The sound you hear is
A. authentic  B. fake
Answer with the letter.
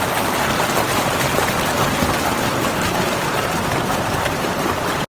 A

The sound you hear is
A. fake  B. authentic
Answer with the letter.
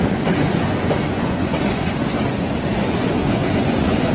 A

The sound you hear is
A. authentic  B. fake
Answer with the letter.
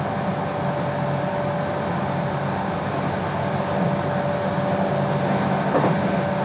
A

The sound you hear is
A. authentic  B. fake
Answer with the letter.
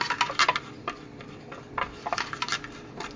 A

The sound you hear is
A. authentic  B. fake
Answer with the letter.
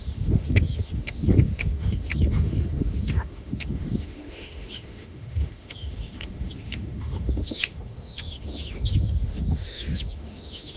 B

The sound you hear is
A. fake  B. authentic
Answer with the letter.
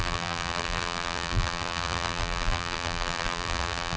A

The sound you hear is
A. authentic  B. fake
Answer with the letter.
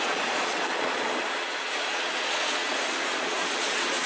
B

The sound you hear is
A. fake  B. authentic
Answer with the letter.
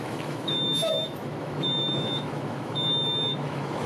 A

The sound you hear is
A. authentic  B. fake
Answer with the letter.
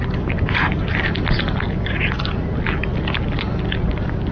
A